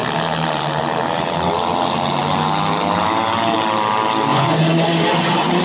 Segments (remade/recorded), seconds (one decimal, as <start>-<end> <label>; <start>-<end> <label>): 0.0-4.3 recorded; 4.3-5.6 remade

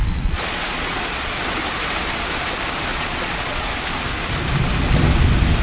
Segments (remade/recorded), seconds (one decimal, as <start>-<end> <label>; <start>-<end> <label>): 0.0-1.4 remade; 1.4-2.9 recorded; 2.9-3.7 remade; 3.7-5.6 recorded

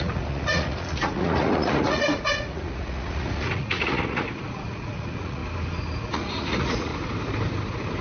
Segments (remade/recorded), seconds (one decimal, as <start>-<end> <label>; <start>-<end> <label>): 0.0-5.4 remade; 5.4-6.0 recorded; 6.0-6.9 remade; 6.9-8.0 recorded

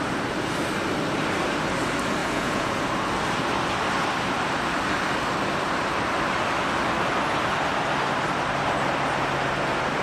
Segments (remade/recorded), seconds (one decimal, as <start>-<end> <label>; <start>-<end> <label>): 0.0-2.2 recorded; 2.2-2.7 remade; 2.7-10.0 recorded